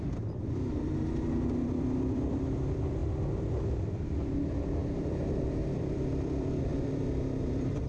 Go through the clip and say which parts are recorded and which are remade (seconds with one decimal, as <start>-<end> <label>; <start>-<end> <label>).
0.0-3.0 remade; 3.0-4.0 recorded; 4.0-7.9 remade